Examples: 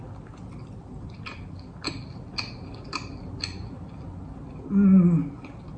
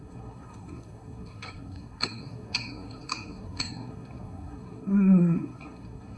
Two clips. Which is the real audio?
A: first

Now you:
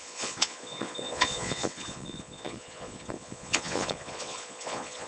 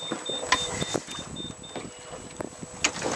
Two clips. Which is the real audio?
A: second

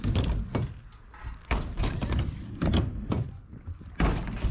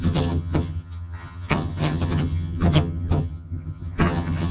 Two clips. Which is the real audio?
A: first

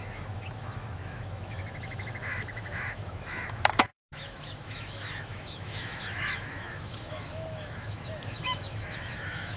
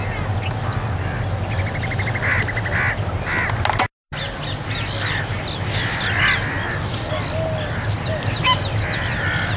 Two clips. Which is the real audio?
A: second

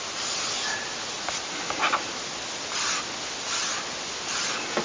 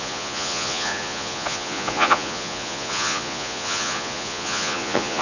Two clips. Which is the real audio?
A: first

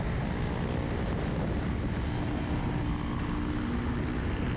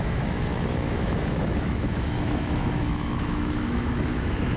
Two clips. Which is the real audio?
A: first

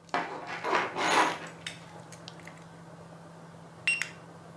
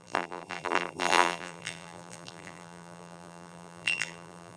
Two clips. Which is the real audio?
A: first